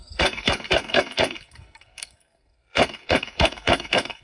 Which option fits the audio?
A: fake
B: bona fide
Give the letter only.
A